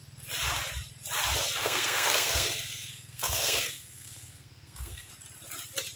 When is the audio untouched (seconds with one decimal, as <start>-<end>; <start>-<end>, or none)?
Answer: 0.0-1.6; 5.1-6.0

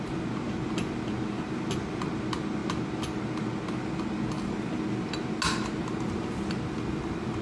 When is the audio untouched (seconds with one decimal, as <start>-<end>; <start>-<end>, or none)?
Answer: 0.0-7.4

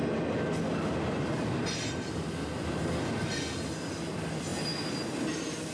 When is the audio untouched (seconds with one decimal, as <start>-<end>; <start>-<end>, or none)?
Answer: 0.0-5.7

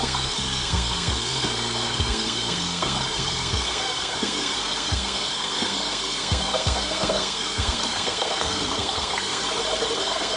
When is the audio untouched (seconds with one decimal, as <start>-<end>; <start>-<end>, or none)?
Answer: 9.4-10.0

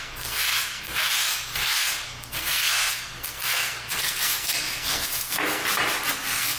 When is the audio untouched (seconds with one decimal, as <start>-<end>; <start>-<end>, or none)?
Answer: 5.6-6.1